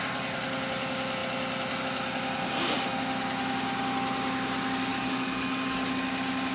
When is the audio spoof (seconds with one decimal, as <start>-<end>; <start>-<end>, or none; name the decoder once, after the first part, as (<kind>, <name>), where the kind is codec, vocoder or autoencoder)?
4.9-5.8 (codec, DAC)